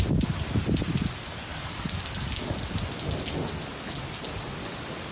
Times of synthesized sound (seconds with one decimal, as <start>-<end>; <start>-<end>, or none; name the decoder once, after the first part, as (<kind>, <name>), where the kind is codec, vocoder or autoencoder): 1.5-2.5 (codec, DAC)